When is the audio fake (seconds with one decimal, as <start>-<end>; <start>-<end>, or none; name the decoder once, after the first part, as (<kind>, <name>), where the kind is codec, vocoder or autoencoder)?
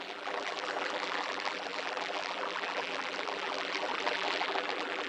0.0-5.1 (vocoder, BigVGAN v2)